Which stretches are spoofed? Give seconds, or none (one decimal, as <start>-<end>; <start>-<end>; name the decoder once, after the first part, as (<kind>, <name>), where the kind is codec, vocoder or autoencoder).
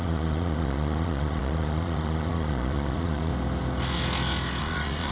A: 0.0-3.3 (vocoder, Vocos); 4.6-5.1